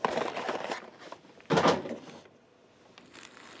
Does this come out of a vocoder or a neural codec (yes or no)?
no